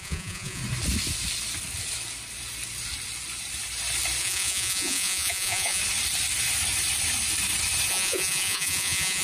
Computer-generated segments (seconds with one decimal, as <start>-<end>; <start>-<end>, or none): 0.0-0.6; 4.2-5.8; 7.9-9.2